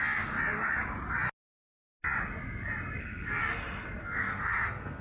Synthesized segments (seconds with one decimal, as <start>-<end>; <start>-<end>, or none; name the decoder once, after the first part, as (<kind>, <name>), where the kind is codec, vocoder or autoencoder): 3.0-3.4 (codec, SNAC); 4.0-5.0